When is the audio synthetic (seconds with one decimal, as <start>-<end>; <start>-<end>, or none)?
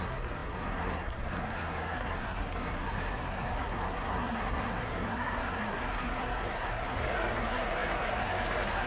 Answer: 0.0-8.9